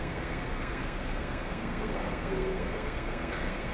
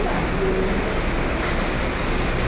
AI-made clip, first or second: first